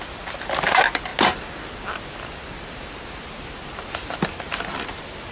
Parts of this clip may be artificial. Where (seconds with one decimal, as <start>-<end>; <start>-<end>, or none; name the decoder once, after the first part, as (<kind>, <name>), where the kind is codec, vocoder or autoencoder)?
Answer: none